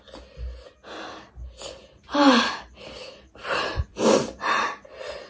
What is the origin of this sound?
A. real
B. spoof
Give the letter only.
A